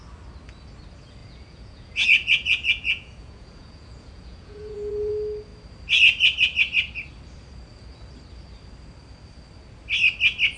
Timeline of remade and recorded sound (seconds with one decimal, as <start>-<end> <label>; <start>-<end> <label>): 0.0-1.2 recorded; 1.2-5.1 remade; 5.1-10.6 recorded